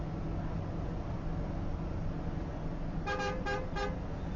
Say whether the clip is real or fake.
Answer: real